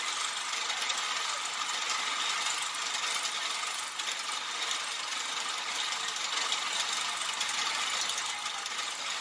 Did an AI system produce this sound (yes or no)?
no